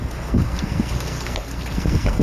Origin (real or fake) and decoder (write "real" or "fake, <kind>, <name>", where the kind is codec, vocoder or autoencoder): fake, codec, SNAC